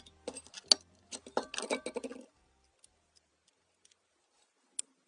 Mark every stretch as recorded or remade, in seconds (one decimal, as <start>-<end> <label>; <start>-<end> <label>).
0.0-2.1 recorded; 2.1-3.3 remade; 3.3-5.1 recorded